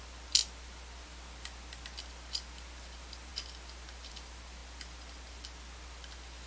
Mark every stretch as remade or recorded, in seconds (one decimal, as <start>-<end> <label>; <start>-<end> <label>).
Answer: 0.0-6.5 recorded